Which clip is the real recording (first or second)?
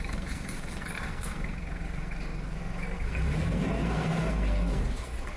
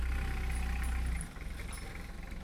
second